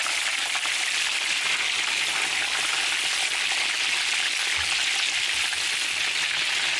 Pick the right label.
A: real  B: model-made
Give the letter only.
A